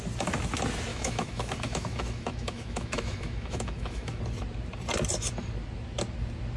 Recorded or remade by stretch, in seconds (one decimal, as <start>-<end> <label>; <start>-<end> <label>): 0.0-0.9 recorded; 0.9-4.2 remade; 4.2-6.6 recorded